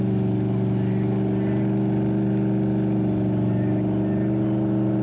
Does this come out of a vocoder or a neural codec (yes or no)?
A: no